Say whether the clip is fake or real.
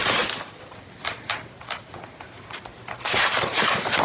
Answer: real